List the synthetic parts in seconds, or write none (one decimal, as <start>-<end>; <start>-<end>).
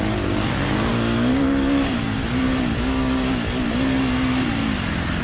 none